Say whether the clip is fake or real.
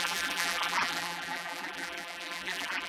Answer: fake